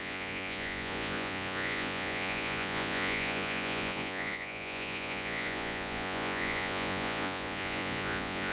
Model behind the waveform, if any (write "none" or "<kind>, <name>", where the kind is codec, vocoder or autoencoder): vocoder, Vocos